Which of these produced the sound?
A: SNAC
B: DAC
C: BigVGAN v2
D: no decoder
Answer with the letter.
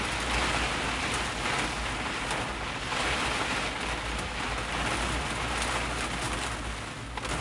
D